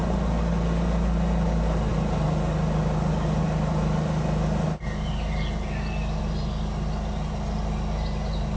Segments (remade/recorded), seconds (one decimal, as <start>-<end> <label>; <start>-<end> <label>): 0.0-8.6 recorded